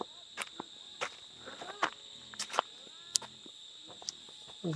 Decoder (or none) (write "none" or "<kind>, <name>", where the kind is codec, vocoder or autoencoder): none